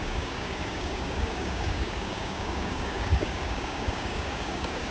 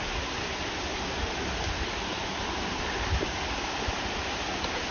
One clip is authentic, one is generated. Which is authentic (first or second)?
second